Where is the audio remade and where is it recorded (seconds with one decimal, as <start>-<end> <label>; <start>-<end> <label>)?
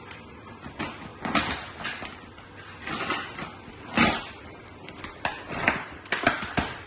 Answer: 0.0-1.1 remade; 1.1-2.1 recorded; 2.1-6.9 remade